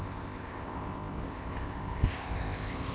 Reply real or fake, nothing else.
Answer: fake